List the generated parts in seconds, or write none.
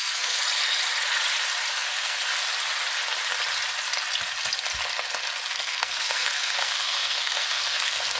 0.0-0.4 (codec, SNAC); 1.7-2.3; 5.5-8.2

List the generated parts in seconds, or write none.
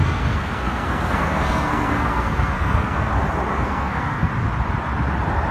0.0-3.1 (codec, SNAC); 3.5-4.3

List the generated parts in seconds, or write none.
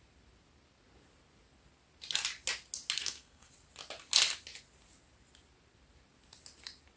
3.0-3.5 (codec, SNAC)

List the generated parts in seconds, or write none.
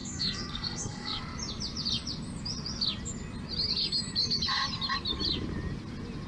0.0-1.2 (codec, SNAC)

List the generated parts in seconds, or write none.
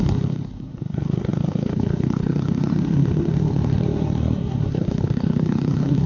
0.0-6.1 (codec, SNAC)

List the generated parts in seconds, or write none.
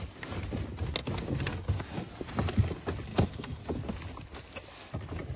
3.1-3.6 (codec, SNAC)